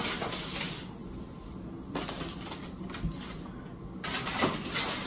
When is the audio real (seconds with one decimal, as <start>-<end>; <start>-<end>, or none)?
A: 0.0-5.1